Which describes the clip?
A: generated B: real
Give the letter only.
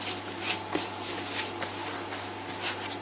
B